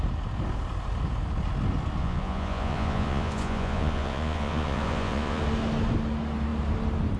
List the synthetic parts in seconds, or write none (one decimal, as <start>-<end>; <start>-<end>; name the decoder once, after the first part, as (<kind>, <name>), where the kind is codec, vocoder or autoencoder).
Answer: 2.0-5.4 (vocoder, Vocos)